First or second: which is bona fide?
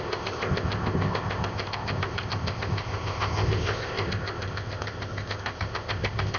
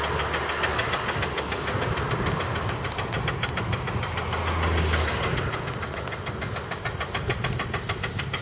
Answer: second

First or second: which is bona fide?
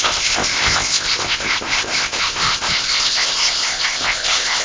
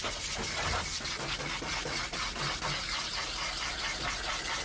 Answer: second